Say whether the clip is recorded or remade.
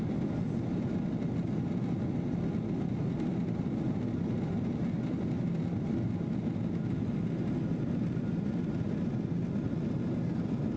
recorded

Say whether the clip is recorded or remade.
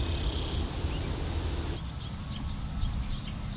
recorded